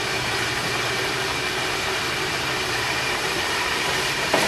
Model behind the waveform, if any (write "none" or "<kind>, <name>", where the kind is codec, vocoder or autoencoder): vocoder, BigVGAN v2